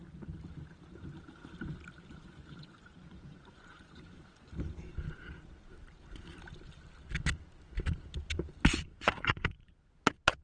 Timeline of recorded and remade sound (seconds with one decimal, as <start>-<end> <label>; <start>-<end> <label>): 0.0-2.1 recorded; 2.1-4.5 remade; 4.5-8.9 recorded; 8.9-9.9 remade; 9.9-10.4 recorded